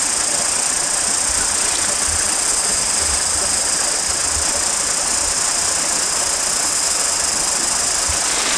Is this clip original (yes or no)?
yes